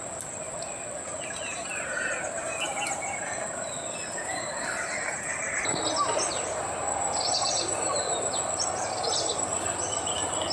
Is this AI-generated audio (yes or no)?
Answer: no